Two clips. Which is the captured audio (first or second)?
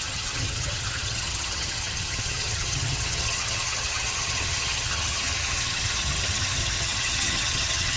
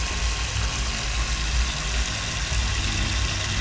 second